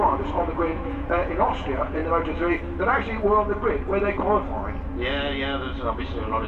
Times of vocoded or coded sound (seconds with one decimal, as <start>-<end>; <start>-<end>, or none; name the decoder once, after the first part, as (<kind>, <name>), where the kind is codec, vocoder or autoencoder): 0.0-2.0 (vocoder, Vocos); 5.9-6.5